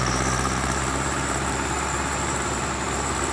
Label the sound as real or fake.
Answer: fake